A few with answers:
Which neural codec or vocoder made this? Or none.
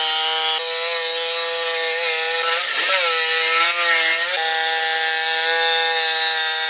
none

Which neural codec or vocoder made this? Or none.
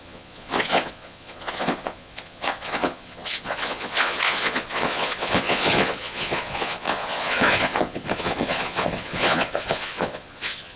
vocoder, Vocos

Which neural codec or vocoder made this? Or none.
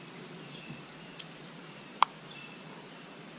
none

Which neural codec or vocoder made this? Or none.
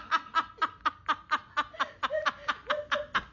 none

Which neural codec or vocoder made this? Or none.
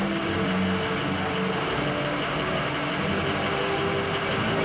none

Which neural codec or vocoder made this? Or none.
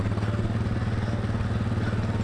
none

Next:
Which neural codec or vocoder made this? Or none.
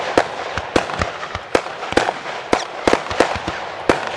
none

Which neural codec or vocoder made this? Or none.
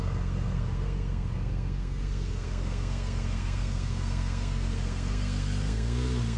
codec, SNAC